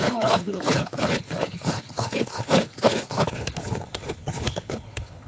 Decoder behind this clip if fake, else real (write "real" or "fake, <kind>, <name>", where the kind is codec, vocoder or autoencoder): fake, codec, HILCodec